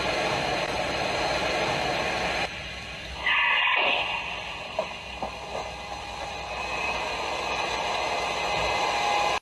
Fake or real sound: real